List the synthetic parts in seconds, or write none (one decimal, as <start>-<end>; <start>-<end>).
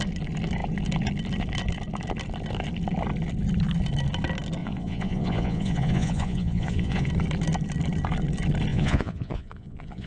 4.6-7.1; 8.7-10.1